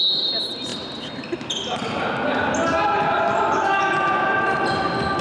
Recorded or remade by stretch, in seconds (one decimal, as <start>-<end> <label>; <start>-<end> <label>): 0.0-5.2 recorded